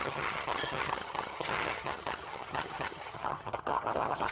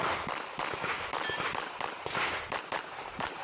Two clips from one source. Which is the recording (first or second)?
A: second